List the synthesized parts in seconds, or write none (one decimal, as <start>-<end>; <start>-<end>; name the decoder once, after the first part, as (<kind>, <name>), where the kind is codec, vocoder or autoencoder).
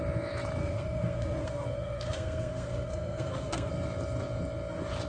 0.6-3.7 (codec, SNAC)